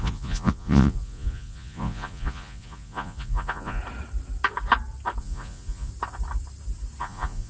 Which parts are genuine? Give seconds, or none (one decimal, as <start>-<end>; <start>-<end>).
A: 3.8-5.2; 5.9-7.0